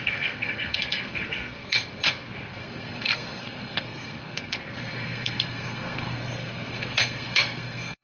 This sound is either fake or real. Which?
fake